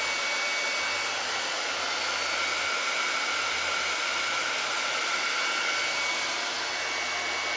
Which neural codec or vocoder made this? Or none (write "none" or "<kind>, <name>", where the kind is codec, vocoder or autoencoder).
none